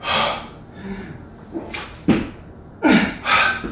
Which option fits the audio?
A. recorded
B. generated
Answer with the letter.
A